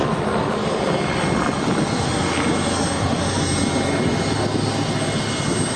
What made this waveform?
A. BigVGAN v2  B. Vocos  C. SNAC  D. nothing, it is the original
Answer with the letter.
D